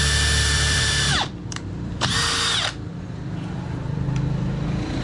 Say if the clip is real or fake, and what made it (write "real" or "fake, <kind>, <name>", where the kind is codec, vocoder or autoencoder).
fake, vocoder, BigVGAN v2